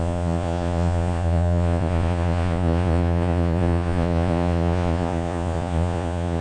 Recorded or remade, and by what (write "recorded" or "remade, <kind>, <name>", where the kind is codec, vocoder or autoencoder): remade, vocoder, Vocos